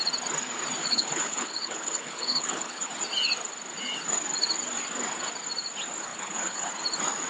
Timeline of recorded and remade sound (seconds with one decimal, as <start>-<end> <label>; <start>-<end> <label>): 0.0-0.8 recorded; 0.8-2.9 remade; 2.9-6.1 recorded; 6.1-6.7 remade; 6.7-7.3 recorded